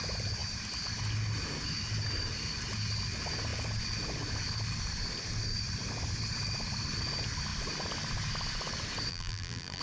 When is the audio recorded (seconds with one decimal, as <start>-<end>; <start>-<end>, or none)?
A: 0.0-9.1